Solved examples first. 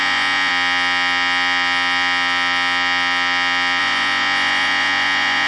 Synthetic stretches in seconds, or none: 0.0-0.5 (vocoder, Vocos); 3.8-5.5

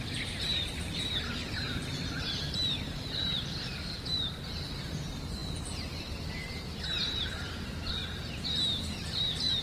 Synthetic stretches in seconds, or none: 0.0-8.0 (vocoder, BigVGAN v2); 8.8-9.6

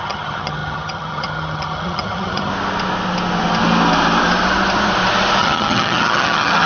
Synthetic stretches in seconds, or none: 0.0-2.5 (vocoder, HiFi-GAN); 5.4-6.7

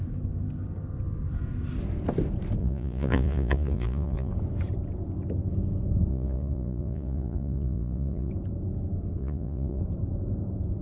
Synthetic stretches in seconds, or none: 2.6-4.3 (vocoder, Vocos); 6.1-8.3; 9.2-9.8

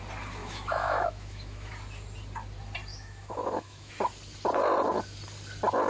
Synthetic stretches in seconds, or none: 0.4-1.7 (autoencoder, DAC-VAE); 2.9-3.9

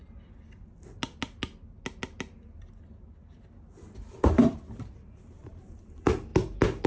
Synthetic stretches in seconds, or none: 4.1-6.3 (vocoder, BigVGAN v2)